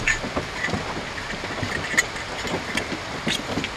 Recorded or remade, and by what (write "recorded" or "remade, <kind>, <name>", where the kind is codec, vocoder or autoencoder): recorded